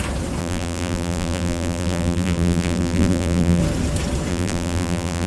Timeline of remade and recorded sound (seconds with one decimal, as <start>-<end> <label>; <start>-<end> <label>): 0.0-0.4 recorded; 0.4-3.6 remade; 3.6-4.3 recorded; 4.3-5.3 remade